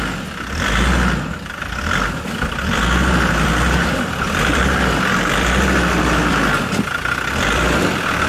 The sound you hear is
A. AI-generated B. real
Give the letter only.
A